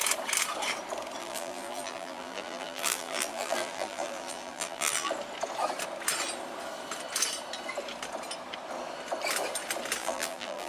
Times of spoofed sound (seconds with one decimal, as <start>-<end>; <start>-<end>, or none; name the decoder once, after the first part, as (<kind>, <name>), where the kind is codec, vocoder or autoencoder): 1.2-5.1 (vocoder, BigVGAN v2); 10.0-10.7